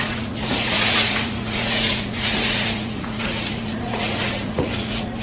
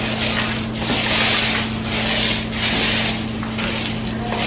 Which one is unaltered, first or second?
second